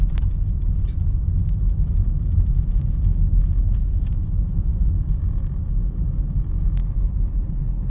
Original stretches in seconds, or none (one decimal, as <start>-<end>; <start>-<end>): 0.0-6.8